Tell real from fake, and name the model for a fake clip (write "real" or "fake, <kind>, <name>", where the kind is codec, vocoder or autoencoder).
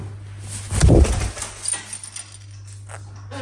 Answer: real